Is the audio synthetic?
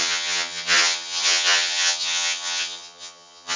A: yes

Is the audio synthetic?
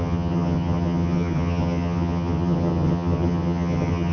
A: yes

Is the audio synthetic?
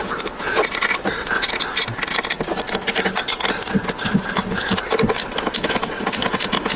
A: no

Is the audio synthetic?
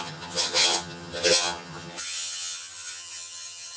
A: yes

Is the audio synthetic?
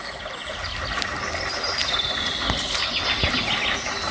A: no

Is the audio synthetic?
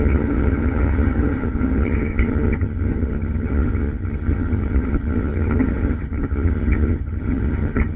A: yes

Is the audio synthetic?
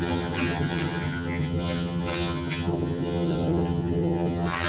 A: yes